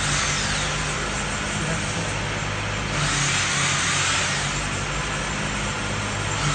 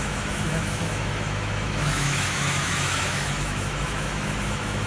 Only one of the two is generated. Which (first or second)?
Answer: second